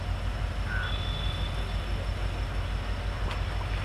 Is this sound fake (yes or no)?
no